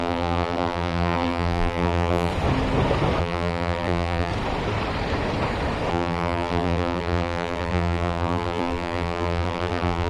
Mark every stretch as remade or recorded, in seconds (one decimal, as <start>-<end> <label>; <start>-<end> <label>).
0.0-2.3 remade; 2.3-3.2 recorded; 3.2-4.3 remade; 4.3-5.9 recorded; 5.9-10.1 remade